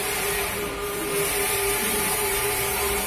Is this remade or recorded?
remade